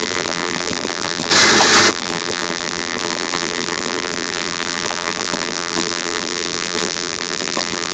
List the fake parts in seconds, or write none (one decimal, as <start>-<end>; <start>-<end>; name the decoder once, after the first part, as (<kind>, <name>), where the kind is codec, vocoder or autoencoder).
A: 0.0-1.3 (vocoder, BigVGAN v2); 1.9-7.9